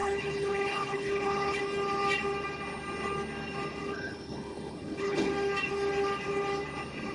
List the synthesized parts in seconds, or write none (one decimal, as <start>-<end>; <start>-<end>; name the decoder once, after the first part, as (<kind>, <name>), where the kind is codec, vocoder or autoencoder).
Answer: 0.0-1.6 (codec, HILCodec); 3.8-5.3